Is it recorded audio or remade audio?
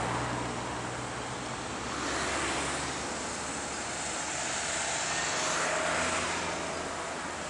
recorded